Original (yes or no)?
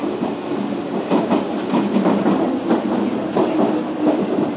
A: yes